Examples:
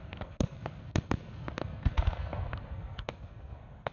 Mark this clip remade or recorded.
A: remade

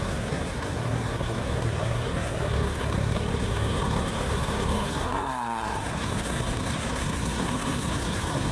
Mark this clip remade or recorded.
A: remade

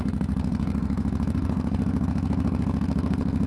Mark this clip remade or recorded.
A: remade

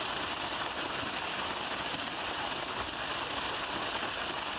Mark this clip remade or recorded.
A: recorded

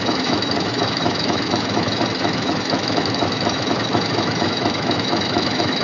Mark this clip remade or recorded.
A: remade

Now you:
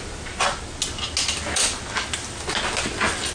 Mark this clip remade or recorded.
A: recorded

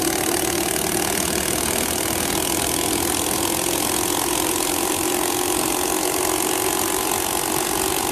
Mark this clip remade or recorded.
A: recorded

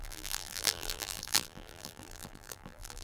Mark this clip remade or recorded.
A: remade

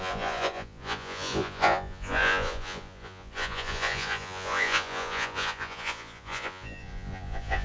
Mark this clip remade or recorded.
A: remade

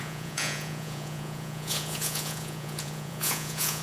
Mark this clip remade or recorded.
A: remade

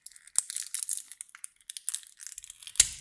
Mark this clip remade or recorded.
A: recorded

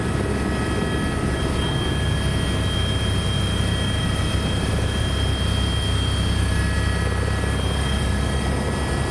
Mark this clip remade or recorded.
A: recorded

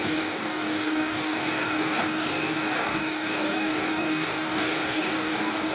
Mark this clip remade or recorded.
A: remade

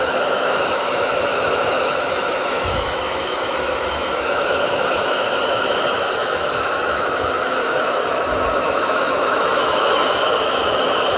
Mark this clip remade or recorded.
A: remade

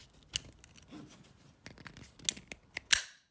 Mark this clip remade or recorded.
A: recorded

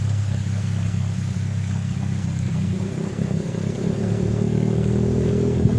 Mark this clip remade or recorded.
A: remade